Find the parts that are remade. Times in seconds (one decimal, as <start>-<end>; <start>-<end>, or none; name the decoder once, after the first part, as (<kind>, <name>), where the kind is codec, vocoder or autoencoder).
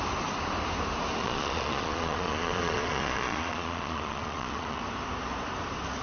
1.2-4.8 (vocoder, Vocos)